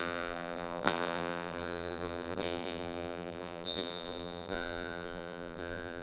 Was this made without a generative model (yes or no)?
no